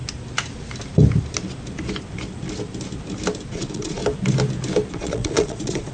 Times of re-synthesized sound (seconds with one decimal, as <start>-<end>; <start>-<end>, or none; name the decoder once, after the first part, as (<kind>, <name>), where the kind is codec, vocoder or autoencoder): 3.5-4.0 (vocoder, Vocos); 4.9-5.9